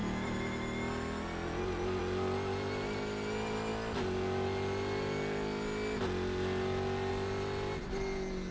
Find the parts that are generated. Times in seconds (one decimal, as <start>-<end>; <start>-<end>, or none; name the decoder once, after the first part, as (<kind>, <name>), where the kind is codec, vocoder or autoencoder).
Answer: none